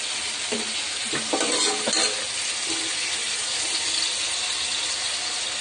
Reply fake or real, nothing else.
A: real